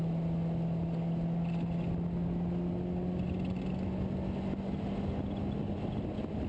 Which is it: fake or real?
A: real